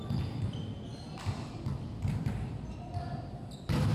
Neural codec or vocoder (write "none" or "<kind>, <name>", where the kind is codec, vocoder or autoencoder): none